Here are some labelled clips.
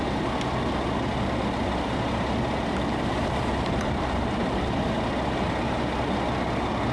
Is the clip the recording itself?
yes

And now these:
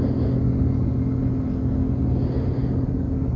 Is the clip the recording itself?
yes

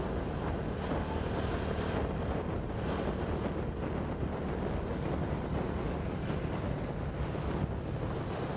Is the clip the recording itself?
yes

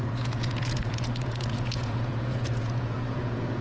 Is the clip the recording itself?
no